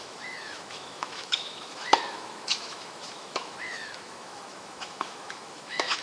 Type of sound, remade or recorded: remade